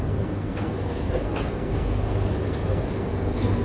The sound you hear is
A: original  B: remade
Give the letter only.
B